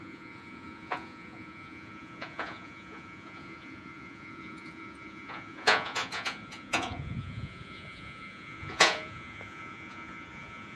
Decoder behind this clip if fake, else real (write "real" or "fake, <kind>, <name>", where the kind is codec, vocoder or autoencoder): fake, vocoder, Vocos